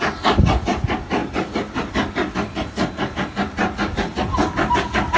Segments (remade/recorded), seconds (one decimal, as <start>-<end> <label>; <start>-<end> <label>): 0.0-1.2 recorded; 1.2-1.9 remade; 1.9-5.2 recorded